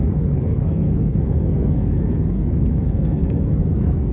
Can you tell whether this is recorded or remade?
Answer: remade